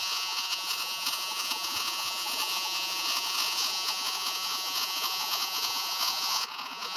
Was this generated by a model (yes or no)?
yes